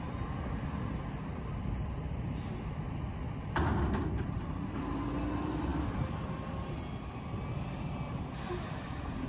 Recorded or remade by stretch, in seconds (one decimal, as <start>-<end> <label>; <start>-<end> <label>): 0.0-9.3 recorded